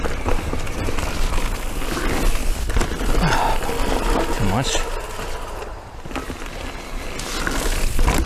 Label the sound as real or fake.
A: real